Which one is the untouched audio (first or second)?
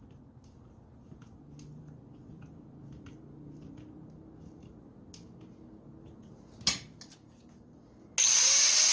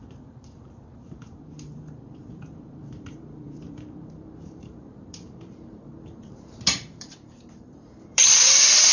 first